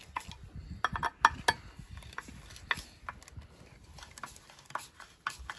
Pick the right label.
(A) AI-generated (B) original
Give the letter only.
B